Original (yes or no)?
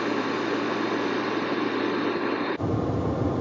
yes